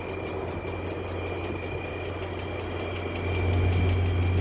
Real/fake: real